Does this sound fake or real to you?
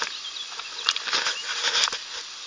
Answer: real